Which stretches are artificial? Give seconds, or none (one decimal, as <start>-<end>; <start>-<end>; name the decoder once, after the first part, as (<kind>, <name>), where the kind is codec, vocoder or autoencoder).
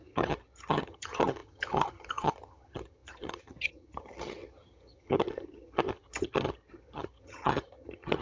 0.0-8.2 (vocoder, HiFi-GAN)